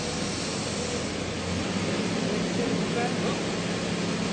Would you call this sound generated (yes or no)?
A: no